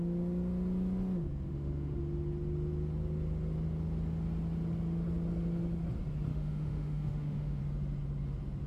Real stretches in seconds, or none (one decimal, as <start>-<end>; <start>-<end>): 0.0-1.5; 2.0-6.3; 7.6-8.7